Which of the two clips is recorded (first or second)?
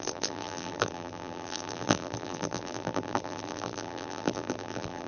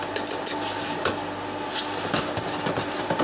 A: second